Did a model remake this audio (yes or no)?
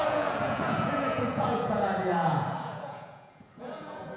yes